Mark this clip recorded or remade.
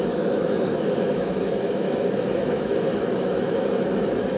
remade